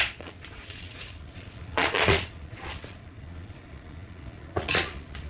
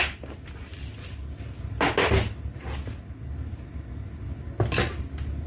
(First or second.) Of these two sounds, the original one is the second